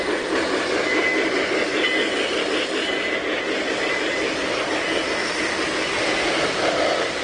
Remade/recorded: recorded